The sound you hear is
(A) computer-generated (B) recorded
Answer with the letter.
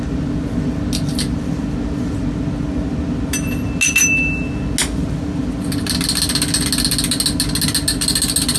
B